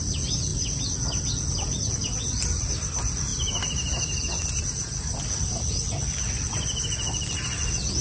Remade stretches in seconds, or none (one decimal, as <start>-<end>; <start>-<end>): none

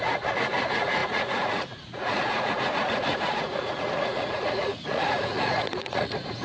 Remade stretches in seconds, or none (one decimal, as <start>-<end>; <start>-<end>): 0.0-6.4

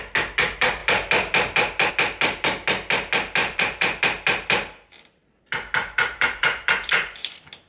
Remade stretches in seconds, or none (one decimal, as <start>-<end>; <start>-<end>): 3.4-4.0; 5.8-7.3